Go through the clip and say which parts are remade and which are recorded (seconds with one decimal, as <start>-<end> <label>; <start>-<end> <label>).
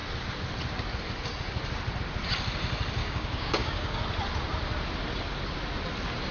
0.0-3.0 recorded; 3.0-4.0 remade; 4.0-6.3 recorded